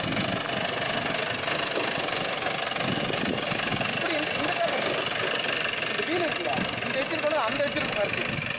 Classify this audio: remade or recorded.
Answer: recorded